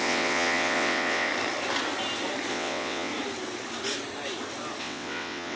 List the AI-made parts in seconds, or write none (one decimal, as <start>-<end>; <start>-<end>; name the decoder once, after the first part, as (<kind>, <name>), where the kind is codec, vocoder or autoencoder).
0.0-1.3 (vocoder, WaveNeXt); 2.5-3.1; 4.8-5.6